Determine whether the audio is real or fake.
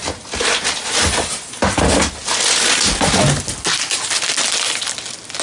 real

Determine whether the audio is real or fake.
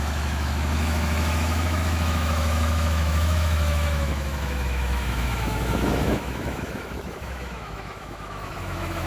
fake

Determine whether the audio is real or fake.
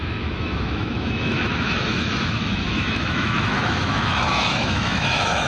fake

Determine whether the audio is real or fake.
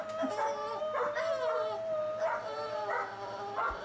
real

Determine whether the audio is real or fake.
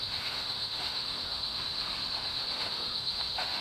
fake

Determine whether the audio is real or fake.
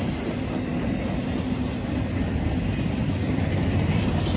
real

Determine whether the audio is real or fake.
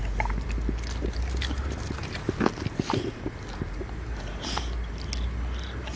real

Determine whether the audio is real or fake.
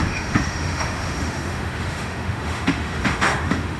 fake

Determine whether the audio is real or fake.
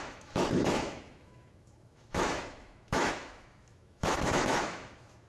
fake